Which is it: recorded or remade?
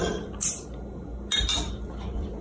recorded